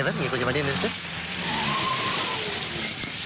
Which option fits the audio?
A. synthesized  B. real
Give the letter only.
B